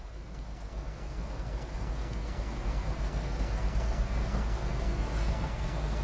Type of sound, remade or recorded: remade